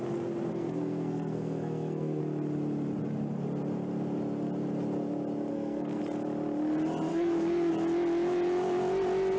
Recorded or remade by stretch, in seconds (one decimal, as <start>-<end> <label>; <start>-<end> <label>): 0.0-0.5 recorded; 0.5-2.2 remade; 2.2-5.5 recorded; 5.5-6.0 remade; 6.0-7.1 recorded; 7.1-7.7 remade; 7.7-9.4 recorded